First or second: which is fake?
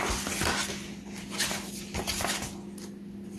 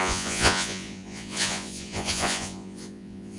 second